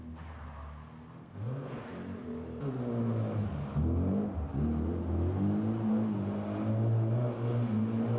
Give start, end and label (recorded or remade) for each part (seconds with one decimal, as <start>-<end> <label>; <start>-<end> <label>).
0.0-1.2 recorded; 1.2-1.9 remade; 1.9-8.2 recorded